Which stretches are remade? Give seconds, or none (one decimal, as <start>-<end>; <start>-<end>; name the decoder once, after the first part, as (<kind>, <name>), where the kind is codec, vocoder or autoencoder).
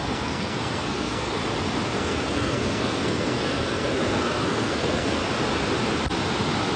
0.0-1.4 (codec, SNAC); 1.9-5.2